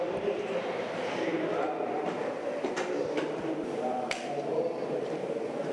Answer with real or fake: fake